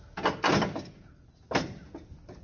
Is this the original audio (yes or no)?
yes